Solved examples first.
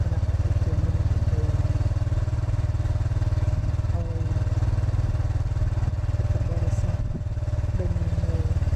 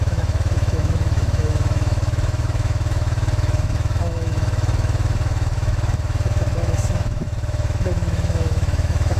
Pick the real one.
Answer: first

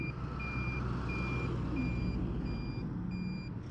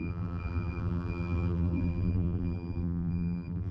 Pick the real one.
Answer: first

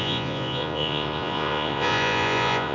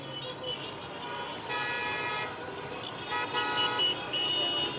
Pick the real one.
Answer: second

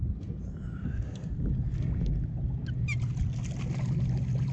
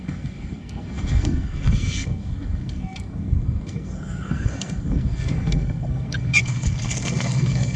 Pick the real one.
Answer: first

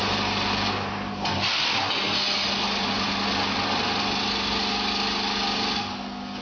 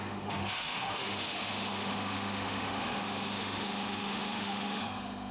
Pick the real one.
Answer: first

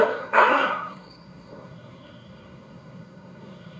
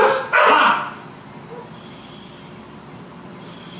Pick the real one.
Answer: second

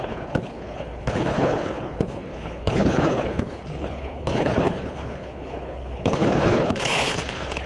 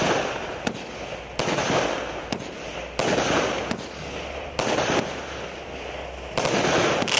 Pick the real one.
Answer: second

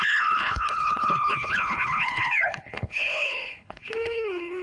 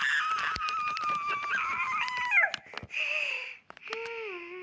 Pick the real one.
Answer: second